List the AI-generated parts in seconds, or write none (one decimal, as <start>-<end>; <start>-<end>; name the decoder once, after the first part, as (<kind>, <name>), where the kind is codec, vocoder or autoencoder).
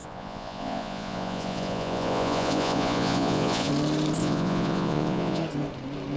0.0-3.7 (vocoder, Vocos); 4.2-5.4